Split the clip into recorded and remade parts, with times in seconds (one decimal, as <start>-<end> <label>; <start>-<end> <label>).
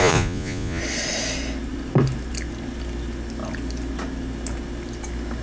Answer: 0.0-0.8 remade; 0.8-5.4 recorded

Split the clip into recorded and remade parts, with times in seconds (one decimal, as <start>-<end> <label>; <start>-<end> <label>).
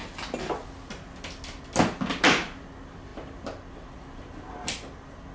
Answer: 0.0-5.3 recorded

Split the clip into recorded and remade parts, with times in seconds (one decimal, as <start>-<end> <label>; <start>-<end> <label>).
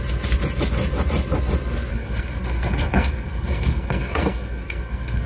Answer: 0.0-1.9 recorded; 1.9-5.3 remade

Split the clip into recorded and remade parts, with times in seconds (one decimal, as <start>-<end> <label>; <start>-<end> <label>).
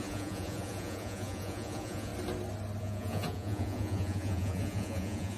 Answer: 0.0-2.1 remade; 2.1-2.8 recorded; 2.8-5.4 remade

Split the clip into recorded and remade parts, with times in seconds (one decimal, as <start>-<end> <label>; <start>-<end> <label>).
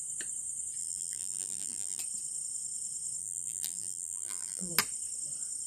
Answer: 0.0-0.8 recorded; 0.8-2.0 remade; 2.0-3.2 recorded; 3.2-4.7 remade; 4.7-5.7 recorded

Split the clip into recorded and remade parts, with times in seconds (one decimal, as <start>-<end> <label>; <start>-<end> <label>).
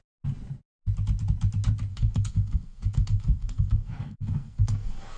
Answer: 0.0-1.9 recorded; 1.9-5.2 remade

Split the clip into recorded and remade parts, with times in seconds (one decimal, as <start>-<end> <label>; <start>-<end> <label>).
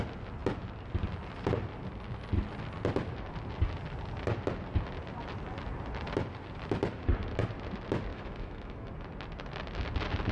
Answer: 0.0-8.1 recorded; 8.1-8.9 remade; 8.9-10.3 recorded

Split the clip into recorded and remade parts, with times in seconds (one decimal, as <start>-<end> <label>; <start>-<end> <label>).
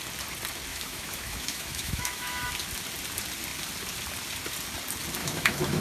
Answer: 0.0-0.7 recorded; 0.7-2.5 remade; 2.5-5.2 recorded; 5.2-5.8 remade